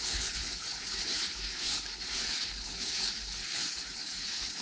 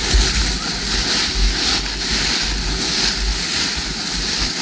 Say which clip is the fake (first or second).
first